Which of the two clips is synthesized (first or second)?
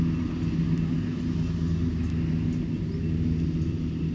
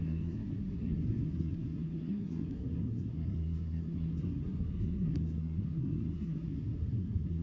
second